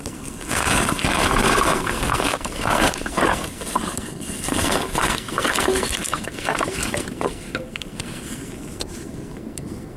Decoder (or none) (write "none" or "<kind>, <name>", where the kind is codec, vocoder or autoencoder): codec, SNAC